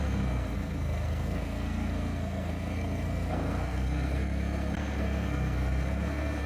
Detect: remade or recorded remade